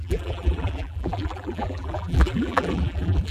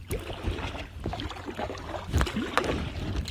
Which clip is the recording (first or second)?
second